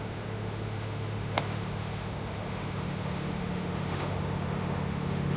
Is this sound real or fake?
fake